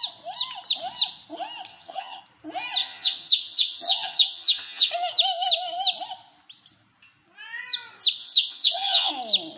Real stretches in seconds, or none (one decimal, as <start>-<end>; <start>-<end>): 0.0-1.7; 2.2-2.8; 4.9-8.2; 9.1-9.6